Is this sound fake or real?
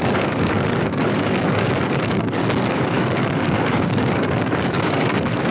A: fake